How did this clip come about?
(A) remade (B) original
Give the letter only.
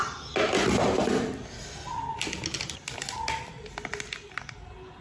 B